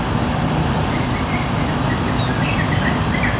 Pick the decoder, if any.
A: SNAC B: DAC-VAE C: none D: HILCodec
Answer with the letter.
C